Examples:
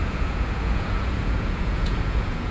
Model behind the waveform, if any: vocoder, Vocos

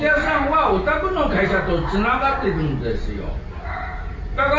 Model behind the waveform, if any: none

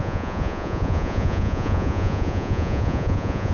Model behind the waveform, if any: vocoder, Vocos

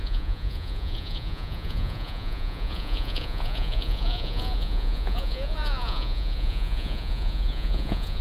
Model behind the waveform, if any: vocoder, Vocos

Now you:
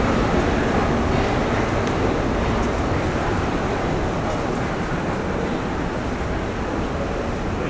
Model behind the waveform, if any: none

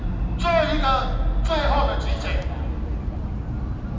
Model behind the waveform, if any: none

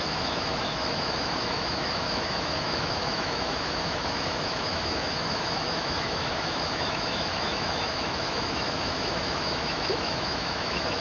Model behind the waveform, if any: autoencoder, DAC-VAE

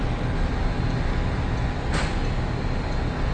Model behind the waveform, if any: none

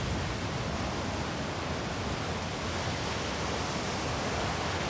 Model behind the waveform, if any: none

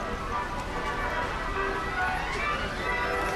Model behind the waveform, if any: none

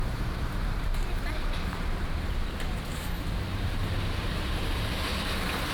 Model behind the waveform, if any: vocoder, BigVGAN v2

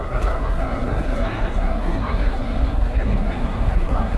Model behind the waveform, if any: codec, SNAC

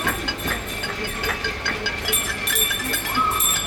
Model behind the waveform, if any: none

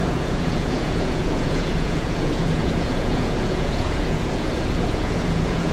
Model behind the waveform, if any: vocoder, Vocos